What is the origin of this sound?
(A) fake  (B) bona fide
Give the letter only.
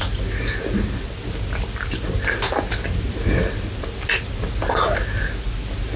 B